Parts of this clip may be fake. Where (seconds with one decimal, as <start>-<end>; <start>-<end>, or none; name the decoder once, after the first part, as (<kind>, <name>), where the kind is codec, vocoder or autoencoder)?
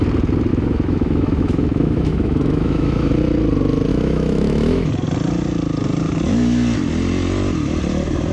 0.5-3.1 (autoencoder, DAC-VAE); 3.9-4.9